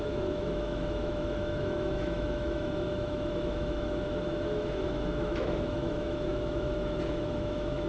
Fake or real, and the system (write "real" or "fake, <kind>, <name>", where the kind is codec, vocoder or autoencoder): fake, autoencoder, DAC-VAE